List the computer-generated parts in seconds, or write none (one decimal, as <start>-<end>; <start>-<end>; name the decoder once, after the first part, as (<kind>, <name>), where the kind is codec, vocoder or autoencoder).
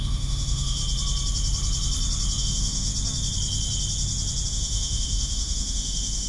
0.0-0.8 (autoencoder, DAC-VAE); 2.4-2.9; 4.5-6.3